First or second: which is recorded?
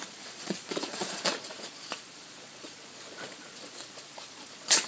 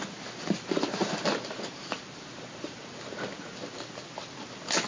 second